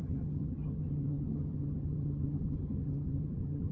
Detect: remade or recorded remade